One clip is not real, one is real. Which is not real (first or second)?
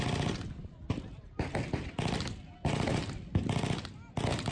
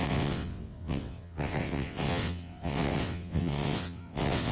second